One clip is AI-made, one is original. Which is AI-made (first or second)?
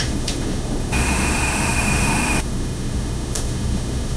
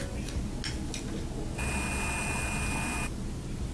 first